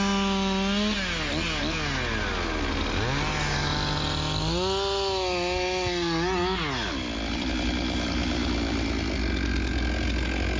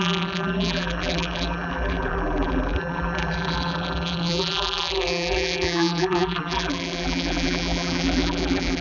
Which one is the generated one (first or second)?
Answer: second